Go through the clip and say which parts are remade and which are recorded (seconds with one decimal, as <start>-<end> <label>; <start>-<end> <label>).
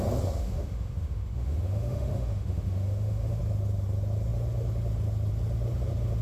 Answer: 0.0-0.4 recorded; 0.4-3.4 remade; 3.4-6.2 recorded